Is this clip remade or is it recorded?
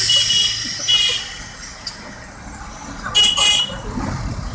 recorded